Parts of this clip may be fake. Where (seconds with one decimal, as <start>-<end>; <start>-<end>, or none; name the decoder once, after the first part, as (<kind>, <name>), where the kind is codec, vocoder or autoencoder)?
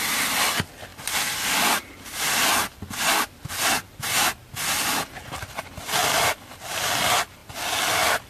0.9-4.2 (vocoder, BigVGAN v2); 6.0-7.0; 7.4-8.3